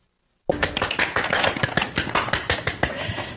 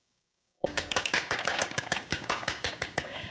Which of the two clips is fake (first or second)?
second